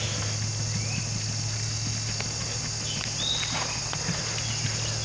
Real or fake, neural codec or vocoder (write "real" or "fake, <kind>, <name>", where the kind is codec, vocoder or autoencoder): real